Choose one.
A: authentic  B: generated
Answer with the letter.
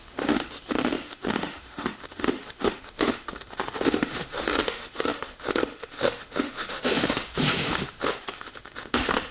B